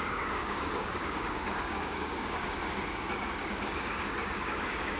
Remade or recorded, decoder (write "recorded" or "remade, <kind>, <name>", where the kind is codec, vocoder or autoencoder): remade, codec, DAC